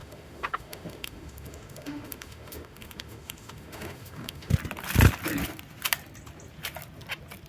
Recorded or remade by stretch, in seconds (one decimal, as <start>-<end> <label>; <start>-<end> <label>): 0.0-4.5 remade; 4.5-7.5 recorded